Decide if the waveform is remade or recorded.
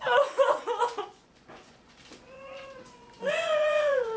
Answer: remade